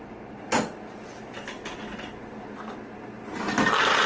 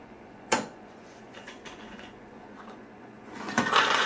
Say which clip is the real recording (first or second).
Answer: first